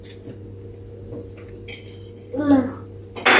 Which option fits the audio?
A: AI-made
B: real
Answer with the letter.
B